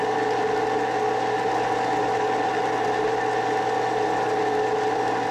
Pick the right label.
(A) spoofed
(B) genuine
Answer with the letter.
B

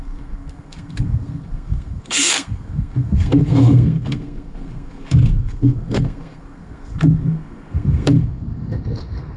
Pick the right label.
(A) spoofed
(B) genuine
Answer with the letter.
A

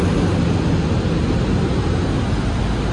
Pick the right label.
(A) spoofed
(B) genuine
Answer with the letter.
B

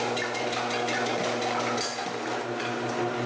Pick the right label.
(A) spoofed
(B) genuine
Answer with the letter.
B